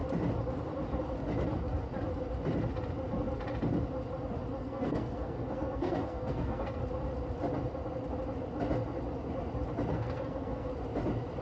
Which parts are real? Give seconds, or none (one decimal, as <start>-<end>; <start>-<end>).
0.0-4.6; 6.8-9.9; 10.7-11.4